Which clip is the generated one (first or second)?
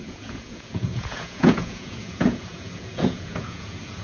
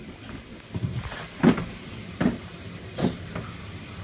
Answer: first